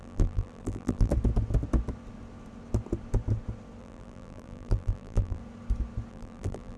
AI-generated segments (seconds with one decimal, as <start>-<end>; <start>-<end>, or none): 0.0-1.1; 3.8-5.4; 6.1-6.8